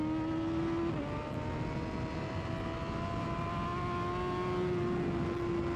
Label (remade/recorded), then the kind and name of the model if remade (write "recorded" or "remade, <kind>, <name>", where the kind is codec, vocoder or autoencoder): recorded